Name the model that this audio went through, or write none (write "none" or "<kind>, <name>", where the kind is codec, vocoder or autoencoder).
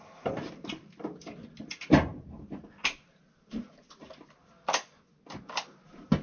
none